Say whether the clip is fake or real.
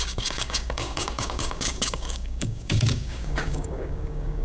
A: fake